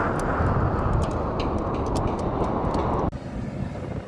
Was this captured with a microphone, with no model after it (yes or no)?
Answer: yes